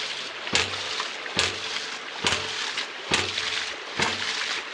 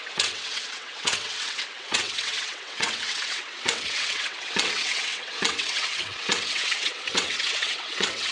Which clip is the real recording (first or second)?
first